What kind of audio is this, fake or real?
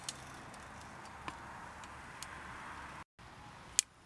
real